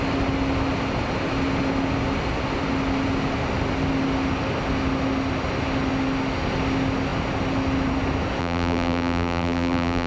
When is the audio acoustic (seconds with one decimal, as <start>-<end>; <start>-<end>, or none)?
0.0-8.4